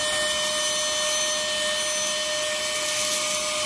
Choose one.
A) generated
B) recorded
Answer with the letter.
B